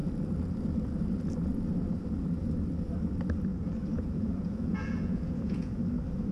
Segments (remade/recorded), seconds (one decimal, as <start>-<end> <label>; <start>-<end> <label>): 0.0-3.5 recorded; 3.5-5.8 remade; 5.8-6.3 recorded